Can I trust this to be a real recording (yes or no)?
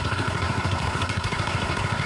no